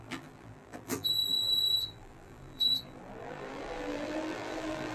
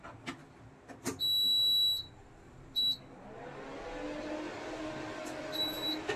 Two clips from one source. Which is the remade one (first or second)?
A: first